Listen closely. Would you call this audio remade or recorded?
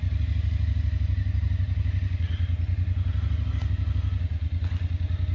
recorded